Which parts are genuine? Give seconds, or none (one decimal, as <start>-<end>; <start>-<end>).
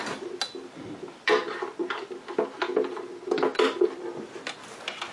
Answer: 0.0-5.1